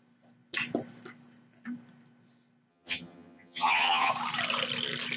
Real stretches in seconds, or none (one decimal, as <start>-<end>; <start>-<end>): 0.0-2.7; 4.1-5.2